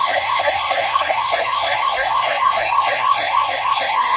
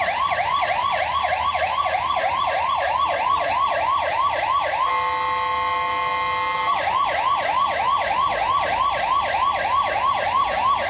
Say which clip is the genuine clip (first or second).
second